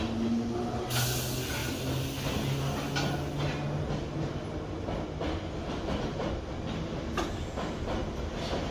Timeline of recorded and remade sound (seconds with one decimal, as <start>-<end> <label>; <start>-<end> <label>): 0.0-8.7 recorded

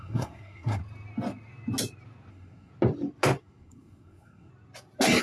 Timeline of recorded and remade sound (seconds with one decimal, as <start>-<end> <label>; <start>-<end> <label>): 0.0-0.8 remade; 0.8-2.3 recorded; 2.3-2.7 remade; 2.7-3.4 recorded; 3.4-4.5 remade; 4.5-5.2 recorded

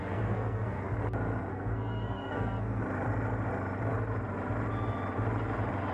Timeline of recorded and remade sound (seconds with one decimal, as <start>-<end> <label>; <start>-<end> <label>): 0.0-0.8 remade; 0.8-1.5 recorded; 1.5-2.8 remade; 2.8-5.9 recorded

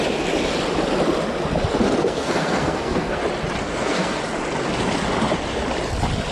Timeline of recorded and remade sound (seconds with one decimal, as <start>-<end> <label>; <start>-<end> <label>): 0.0-2.0 recorded; 2.0-3.2 remade; 3.2-3.6 recorded; 3.6-4.2 remade; 4.2-6.3 recorded

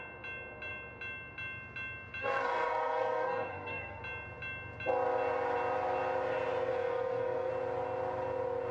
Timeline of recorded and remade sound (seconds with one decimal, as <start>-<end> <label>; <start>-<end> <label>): 0.0-2.2 recorded; 2.2-4.0 remade; 4.0-6.7 recorded; 6.7-7.5 remade; 7.5-8.7 recorded

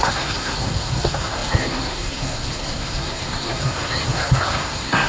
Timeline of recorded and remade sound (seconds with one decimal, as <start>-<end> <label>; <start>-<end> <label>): 0.0-5.1 remade